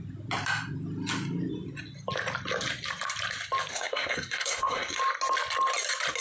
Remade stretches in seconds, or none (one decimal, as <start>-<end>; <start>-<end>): 3.7-5.0